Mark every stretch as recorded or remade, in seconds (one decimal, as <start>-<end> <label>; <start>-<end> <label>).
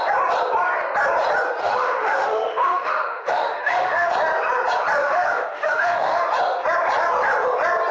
0.0-1.6 recorded; 1.6-4.1 remade; 4.1-5.0 recorded; 5.0-6.2 remade; 6.2-7.9 recorded